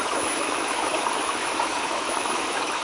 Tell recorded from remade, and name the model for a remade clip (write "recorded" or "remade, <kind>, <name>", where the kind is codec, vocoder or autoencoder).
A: remade, autoencoder, DAC-VAE